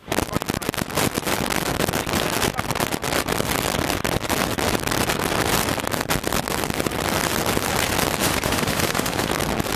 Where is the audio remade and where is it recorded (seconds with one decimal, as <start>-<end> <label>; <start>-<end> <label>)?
0.0-8.2 recorded; 8.2-9.3 remade; 9.3-9.8 recorded